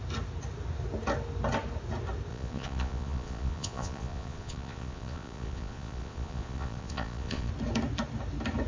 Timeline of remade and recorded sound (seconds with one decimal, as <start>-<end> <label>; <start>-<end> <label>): 0.0-2.3 recorded; 2.3-7.5 remade; 7.5-8.7 recorded